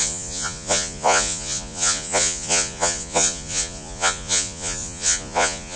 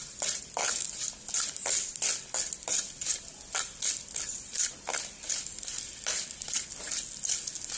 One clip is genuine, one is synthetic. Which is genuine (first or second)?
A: second